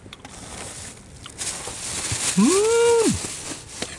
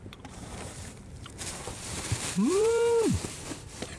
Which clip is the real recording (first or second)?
first